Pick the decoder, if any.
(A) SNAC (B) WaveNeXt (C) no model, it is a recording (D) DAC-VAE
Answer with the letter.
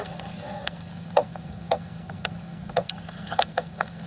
A